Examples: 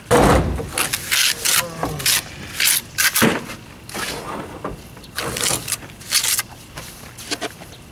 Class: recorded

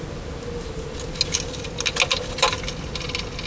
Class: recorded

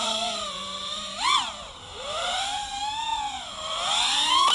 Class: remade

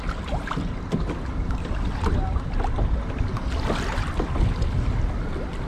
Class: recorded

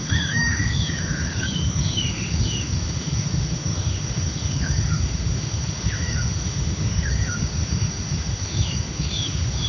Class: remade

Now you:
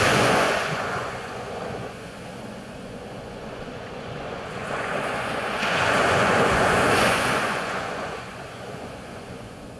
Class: remade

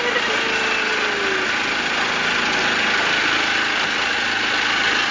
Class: recorded